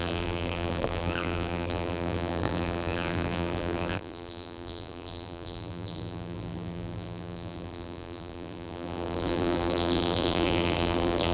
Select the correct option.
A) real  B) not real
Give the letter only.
B